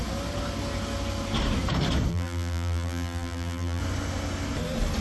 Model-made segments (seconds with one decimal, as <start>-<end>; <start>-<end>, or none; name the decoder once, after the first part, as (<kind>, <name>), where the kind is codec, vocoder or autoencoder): 2.1-3.8 (vocoder, BigVGAN v2)